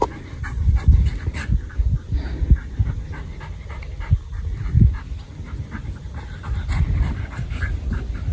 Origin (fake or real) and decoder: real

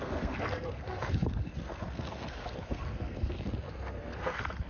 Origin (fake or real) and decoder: fake, codec, SNAC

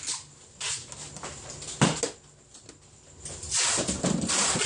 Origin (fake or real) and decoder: real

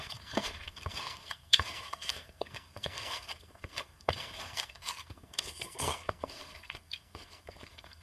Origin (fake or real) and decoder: fake, codec, SNAC